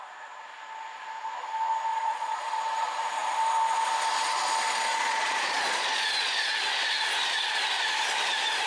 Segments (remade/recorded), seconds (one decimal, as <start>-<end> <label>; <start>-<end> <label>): 0.0-1.9 recorded; 1.9-2.6 remade; 2.6-4.9 recorded; 4.9-6.5 remade; 6.5-8.7 recorded